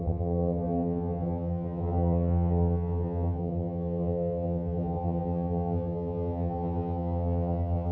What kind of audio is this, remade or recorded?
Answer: remade